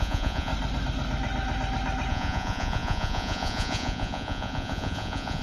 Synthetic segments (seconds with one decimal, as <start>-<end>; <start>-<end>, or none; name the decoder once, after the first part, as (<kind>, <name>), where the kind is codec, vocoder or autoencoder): 0.0-0.5 (vocoder, Vocos); 2.1-5.4